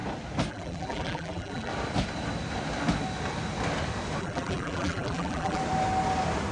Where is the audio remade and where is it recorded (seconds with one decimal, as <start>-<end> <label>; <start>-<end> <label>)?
0.0-0.5 recorded; 0.5-1.7 remade; 1.7-4.2 recorded; 4.2-5.6 remade; 5.6-6.5 recorded